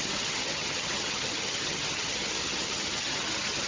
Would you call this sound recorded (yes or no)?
no